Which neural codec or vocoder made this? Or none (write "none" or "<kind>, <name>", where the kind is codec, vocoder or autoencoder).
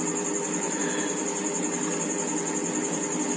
none